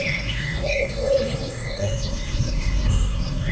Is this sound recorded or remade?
remade